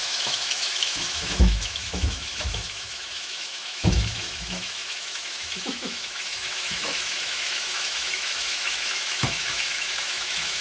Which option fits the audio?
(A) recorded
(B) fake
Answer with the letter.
B